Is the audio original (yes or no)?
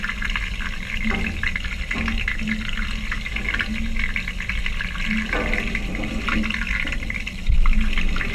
yes